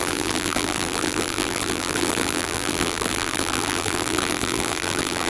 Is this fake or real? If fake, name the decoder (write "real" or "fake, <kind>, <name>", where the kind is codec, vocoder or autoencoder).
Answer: fake, vocoder, BigVGAN v2